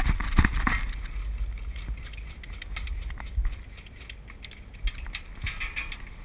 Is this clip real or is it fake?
real